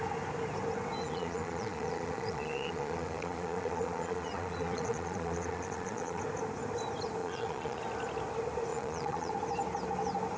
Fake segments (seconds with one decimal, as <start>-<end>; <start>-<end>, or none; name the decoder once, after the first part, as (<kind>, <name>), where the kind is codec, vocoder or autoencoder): 1.0-6.2 (vocoder, Vocos); 7.2-7.8; 8.7-9.3

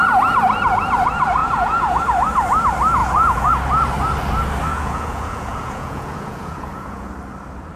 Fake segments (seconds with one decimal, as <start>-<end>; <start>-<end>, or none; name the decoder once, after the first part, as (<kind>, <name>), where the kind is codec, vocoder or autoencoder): 1.4-2.0 (vocoder, Vocos); 3.0-3.5; 4.7-7.1

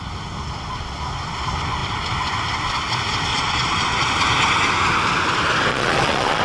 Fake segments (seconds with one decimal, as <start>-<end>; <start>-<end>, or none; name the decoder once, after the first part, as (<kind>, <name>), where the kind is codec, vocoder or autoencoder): 3.3-4.1 (vocoder, Vocos); 5.7-6.4